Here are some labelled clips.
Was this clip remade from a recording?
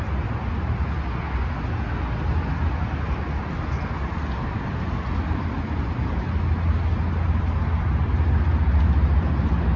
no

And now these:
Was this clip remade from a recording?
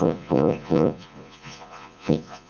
yes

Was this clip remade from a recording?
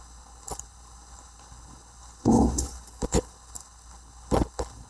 yes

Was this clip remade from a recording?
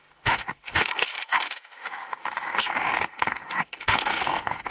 yes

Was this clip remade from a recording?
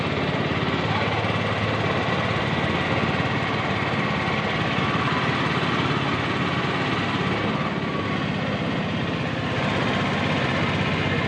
no